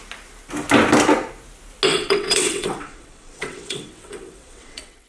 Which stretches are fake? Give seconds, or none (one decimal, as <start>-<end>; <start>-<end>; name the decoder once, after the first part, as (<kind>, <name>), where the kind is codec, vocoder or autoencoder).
1.9-5.1 (vocoder, WaveNeXt)